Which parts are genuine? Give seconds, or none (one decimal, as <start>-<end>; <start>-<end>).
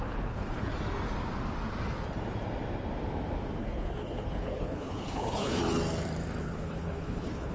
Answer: 0.7-3.6; 5.6-6.4